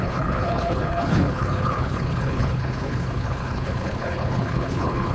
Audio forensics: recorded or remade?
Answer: remade